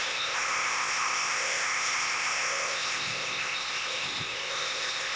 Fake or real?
fake